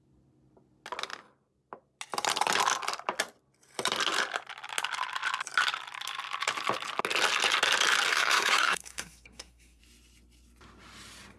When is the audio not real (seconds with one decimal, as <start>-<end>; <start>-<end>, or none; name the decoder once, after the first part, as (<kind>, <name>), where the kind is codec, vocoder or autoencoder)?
8.1-9.8 (codec, SNAC)